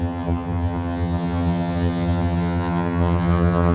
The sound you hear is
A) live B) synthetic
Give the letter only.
B